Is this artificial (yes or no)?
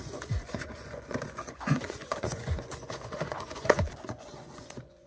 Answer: yes